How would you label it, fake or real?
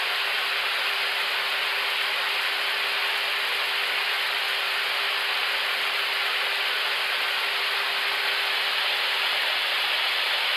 real